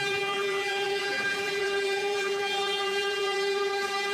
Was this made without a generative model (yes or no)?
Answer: no